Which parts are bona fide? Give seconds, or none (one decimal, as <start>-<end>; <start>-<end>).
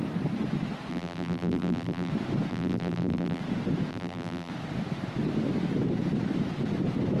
0.0-0.9; 2.1-2.5; 3.4-3.9; 4.5-7.2